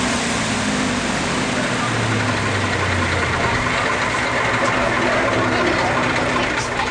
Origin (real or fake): real